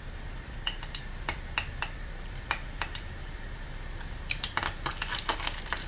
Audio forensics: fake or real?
fake